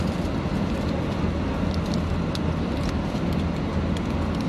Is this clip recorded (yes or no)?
yes